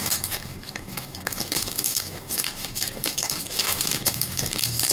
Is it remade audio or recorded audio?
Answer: remade